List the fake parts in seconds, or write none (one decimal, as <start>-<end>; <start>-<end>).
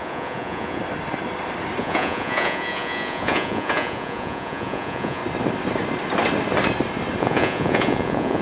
0.0-0.8; 1.8-5.2; 7.2-8.4